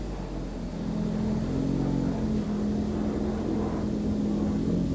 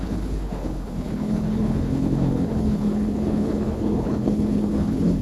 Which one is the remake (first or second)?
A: second